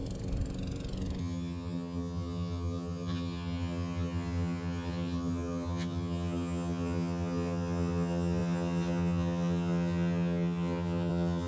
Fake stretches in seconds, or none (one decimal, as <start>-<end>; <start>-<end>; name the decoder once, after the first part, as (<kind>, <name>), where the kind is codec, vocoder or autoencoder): 1.2-11.5 (vocoder, HiFi-GAN)